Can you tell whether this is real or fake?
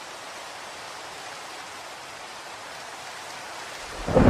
fake